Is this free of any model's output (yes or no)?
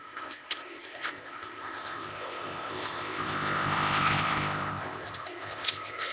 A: no